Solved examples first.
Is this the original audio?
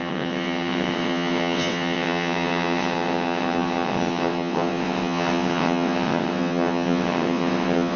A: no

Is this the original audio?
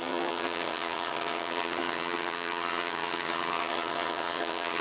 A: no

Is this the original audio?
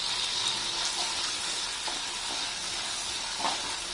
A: yes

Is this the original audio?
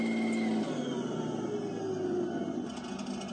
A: yes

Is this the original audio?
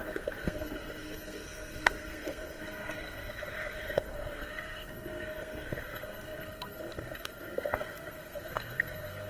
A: no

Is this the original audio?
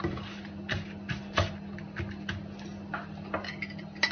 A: yes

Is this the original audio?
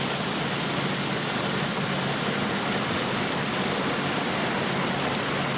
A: yes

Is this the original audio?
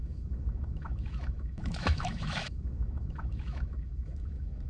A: no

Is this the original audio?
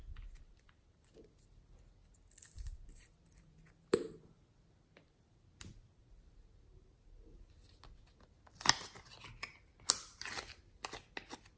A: yes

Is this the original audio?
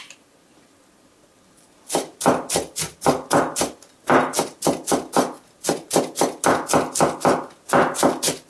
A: yes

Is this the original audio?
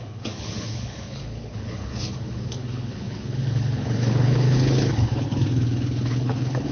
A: no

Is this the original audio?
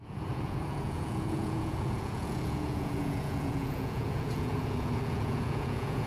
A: no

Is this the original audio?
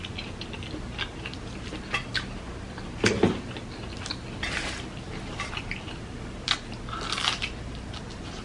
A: yes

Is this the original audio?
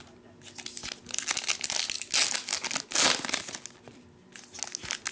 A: yes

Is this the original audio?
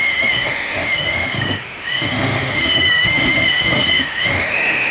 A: no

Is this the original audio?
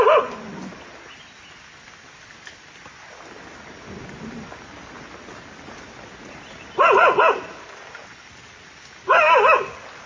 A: yes